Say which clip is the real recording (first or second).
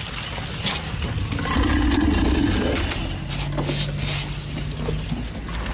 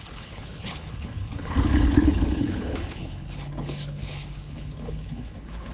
first